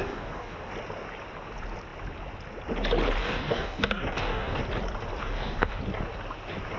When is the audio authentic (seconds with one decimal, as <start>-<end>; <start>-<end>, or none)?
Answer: 0.7-3.2; 4.6-5.2; 5.8-6.8

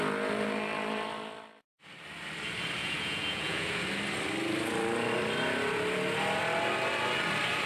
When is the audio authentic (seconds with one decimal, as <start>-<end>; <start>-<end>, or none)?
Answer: 0.0-2.8; 3.9-7.7

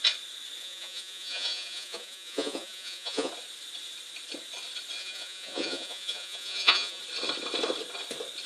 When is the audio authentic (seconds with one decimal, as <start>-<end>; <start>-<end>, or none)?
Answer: 0.0-0.6; 3.3-5.0; 7.0-8.5

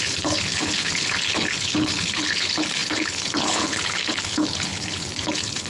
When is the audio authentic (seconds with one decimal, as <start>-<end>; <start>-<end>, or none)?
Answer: none

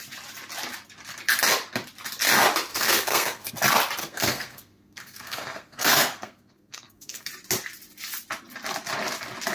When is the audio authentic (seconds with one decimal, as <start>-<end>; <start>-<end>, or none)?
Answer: 0.0-2.7; 3.5-4.0; 7.3-9.5

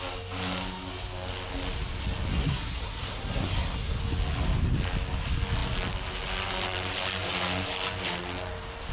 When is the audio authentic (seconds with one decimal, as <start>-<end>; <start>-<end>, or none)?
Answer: 0.0-2.3; 4.0-8.9

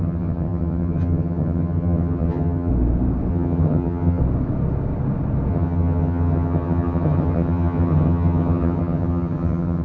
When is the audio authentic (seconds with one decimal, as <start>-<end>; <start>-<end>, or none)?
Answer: 2.7-3.3; 4.2-5.5

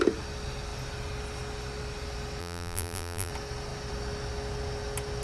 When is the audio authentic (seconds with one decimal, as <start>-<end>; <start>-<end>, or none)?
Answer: 0.0-2.4; 3.3-5.2